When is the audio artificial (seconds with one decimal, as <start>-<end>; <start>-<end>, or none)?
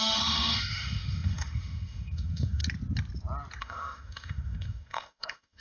0.0-2.6; 3.6-5.6